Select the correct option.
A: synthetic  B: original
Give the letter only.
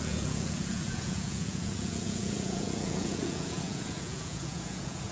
A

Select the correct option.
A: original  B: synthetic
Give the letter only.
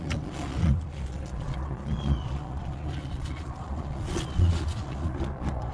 B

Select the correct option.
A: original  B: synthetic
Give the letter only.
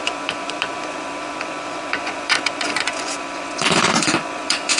B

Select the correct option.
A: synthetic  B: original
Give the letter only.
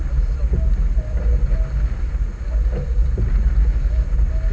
B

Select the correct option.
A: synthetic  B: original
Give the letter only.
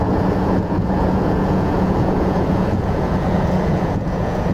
A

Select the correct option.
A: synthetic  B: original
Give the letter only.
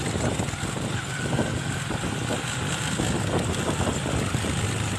B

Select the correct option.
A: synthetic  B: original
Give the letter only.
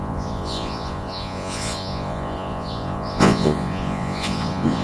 A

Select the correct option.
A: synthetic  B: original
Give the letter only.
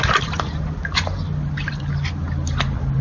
B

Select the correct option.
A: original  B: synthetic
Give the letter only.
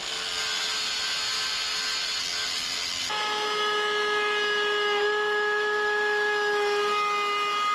A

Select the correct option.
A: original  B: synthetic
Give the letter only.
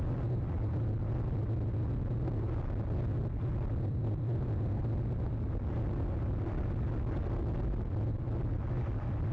A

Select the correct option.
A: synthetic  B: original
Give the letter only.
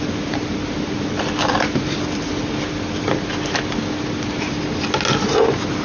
B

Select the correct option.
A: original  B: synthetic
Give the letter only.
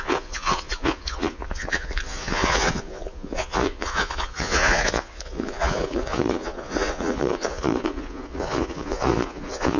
B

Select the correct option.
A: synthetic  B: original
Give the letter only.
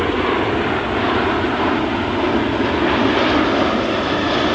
B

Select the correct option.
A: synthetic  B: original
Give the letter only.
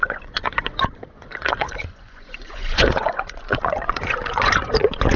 A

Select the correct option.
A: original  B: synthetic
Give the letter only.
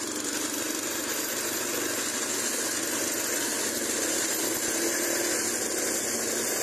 A